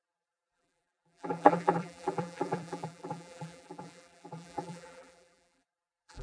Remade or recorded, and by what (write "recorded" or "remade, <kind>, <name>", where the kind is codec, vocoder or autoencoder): remade, vocoder, BigVGAN v2